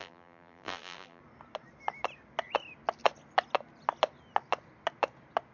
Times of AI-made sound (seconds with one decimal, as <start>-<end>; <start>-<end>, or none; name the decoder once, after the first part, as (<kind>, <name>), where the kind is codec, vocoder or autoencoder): 0.0-1.2 (vocoder, BigVGAN v2)